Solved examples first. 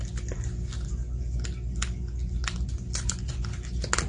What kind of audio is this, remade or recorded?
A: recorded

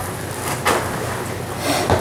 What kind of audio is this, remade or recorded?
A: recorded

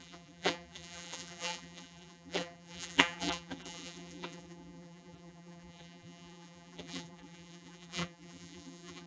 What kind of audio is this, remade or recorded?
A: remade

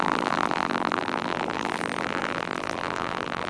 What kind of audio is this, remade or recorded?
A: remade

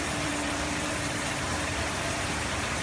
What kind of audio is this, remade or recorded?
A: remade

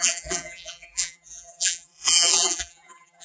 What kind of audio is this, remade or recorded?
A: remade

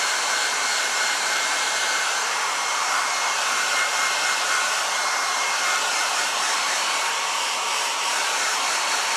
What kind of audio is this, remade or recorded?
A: remade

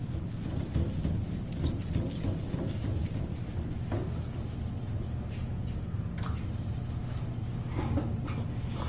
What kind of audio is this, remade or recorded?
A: recorded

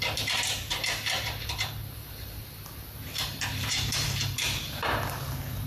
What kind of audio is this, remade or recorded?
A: remade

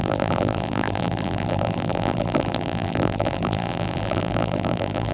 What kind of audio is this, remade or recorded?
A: remade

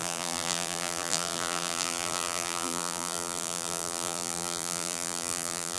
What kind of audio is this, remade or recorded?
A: remade